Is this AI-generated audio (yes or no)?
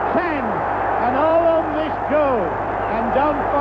yes